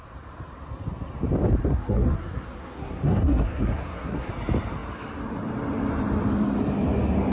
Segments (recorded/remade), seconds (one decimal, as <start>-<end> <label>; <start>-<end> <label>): 0.0-1.6 recorded; 1.6-4.3 remade; 4.3-7.3 recorded